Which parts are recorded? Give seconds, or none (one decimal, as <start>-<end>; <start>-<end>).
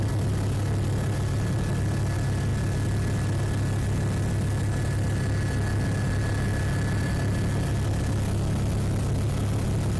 0.0-10.0